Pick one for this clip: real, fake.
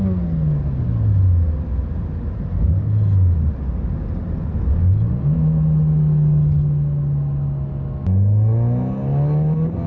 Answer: real